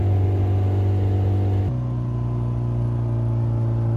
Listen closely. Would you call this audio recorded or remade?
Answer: recorded